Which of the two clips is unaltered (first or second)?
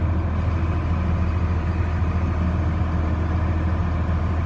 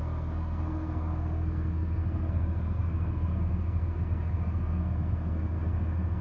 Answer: first